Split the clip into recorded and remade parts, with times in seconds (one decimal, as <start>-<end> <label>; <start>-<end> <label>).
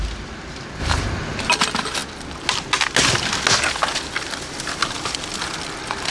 0.0-6.1 recorded